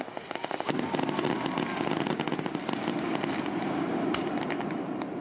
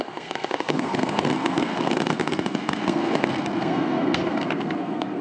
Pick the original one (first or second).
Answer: first